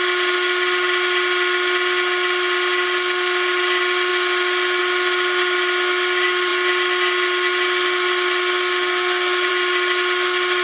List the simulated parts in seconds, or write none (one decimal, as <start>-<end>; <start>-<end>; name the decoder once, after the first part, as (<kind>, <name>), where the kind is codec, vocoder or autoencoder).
none